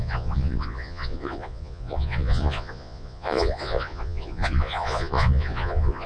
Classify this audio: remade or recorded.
remade